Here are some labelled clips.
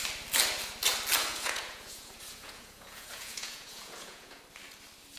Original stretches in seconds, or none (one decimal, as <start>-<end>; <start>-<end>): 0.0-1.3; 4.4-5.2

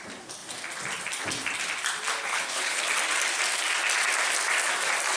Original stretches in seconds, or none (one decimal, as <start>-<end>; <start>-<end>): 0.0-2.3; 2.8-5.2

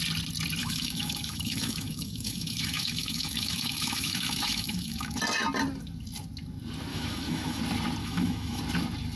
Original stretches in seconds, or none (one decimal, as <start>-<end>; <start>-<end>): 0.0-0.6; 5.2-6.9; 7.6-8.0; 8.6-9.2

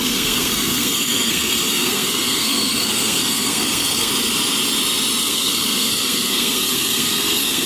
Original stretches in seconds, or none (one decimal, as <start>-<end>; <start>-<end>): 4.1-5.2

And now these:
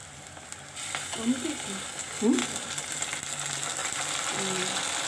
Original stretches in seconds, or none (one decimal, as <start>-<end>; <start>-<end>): 0.0-5.1

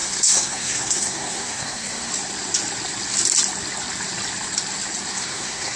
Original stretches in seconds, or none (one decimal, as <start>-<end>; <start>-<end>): 2.1-5.1